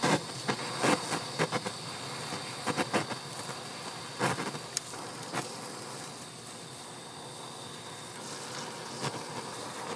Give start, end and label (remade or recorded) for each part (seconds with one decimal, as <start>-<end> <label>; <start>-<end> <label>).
0.0-10.0 recorded